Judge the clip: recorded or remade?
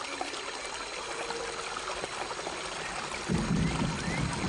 recorded